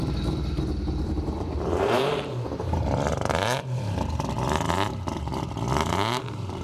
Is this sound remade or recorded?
remade